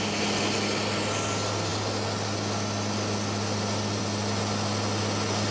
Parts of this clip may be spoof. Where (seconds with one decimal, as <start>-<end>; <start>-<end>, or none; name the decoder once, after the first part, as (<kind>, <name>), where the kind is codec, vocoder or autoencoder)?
none